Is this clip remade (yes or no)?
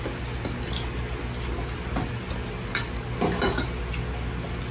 no